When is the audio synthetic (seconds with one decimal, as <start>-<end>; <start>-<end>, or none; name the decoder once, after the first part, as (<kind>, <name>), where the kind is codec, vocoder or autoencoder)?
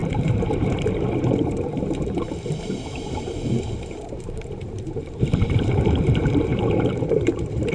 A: 0.0-7.7 (vocoder, BigVGAN v2)